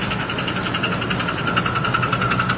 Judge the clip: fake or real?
real